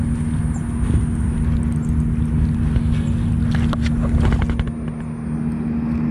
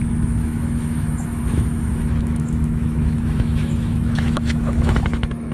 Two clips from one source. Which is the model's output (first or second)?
second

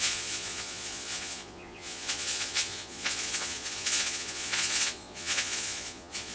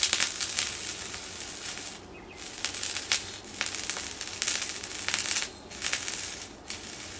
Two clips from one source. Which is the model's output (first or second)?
first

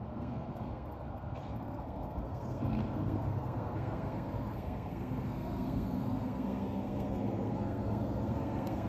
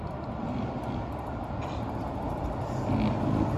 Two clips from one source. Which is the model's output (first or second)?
first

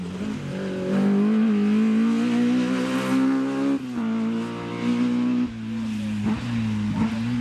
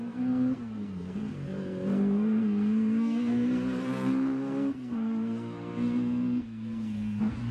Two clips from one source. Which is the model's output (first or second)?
second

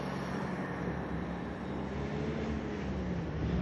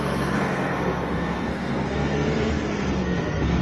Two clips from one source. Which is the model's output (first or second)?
second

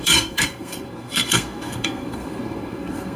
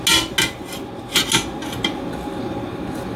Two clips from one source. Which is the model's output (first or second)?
first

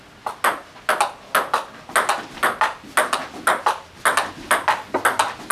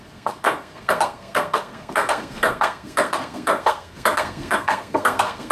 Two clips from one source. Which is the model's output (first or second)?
second